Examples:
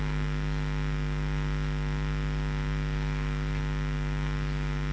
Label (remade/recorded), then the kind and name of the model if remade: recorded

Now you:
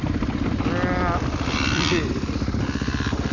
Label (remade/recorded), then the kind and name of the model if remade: recorded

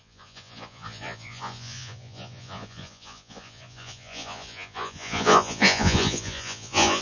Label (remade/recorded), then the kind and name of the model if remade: remade, vocoder, Vocos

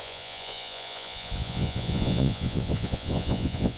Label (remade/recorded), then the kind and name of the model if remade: remade, vocoder, Vocos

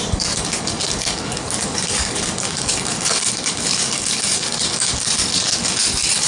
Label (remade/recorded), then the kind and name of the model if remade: remade, codec, DAC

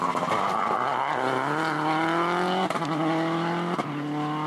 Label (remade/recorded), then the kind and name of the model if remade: recorded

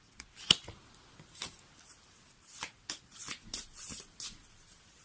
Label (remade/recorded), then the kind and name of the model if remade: recorded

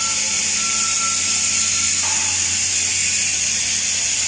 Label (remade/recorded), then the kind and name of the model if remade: recorded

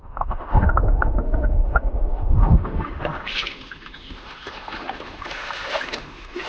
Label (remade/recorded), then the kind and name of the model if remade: remade, autoencoder, DAC-VAE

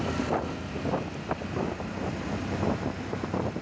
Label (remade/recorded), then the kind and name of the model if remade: recorded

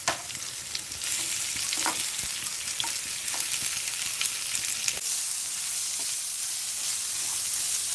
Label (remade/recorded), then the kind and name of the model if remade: recorded